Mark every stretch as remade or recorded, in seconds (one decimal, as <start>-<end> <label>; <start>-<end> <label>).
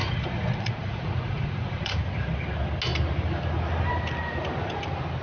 0.0-2.0 remade; 2.0-5.2 recorded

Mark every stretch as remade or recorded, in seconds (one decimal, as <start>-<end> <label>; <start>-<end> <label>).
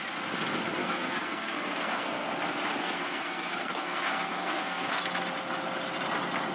0.0-0.8 recorded; 0.8-2.3 remade; 2.3-2.8 recorded; 2.8-5.0 remade; 5.0-6.5 recorded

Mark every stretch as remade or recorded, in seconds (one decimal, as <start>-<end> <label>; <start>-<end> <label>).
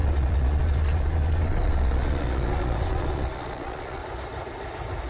0.0-4.0 remade; 4.0-5.1 recorded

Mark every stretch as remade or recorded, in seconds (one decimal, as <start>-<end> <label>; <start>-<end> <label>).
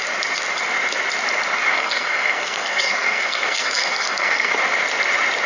0.0-1.7 recorded; 1.7-4.5 remade; 4.5-5.5 recorded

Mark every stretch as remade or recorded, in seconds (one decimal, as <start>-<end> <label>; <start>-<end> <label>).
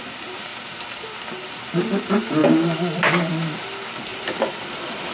0.0-0.5 recorded; 0.5-1.6 remade; 1.6-2.4 recorded; 2.4-3.3 remade; 3.3-4.1 recorded; 4.1-5.1 remade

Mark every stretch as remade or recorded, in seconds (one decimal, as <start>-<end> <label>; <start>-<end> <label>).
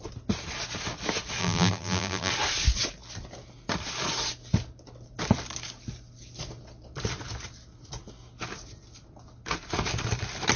0.0-1.4 recorded; 1.4-2.3 remade; 2.3-10.6 recorded